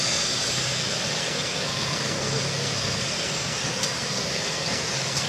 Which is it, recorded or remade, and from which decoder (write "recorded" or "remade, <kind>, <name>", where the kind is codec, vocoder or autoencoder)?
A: remade, codec, SNAC